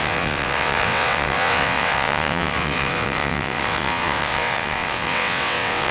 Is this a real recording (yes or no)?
no